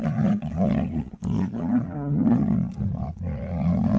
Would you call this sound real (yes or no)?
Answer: no